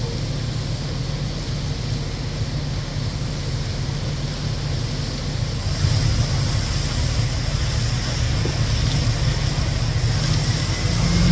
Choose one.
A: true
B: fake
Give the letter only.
A